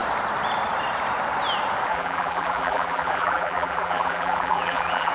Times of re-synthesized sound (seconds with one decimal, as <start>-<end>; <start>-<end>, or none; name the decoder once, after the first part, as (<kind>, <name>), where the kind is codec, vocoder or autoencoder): 1.9-5.1 (vocoder, BigVGAN v2)